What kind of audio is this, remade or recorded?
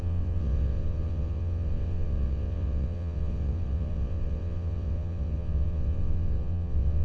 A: remade